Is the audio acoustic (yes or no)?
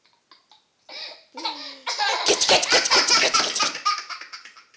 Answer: yes